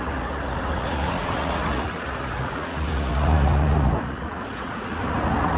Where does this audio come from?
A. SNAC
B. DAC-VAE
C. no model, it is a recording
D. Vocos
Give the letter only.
D